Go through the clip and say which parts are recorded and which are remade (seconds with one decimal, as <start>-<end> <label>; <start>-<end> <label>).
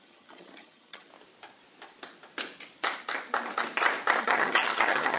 0.0-1.1 remade; 1.1-4.2 recorded; 4.2-5.2 remade